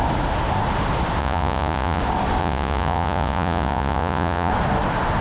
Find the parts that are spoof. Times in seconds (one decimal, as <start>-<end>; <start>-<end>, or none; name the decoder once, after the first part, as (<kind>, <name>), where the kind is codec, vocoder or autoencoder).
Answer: 1.2-2.0 (vocoder, Vocos); 2.4-4.5